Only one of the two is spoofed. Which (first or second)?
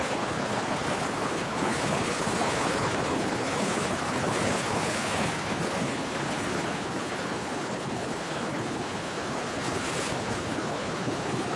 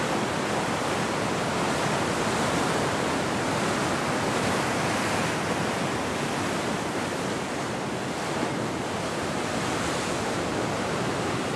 first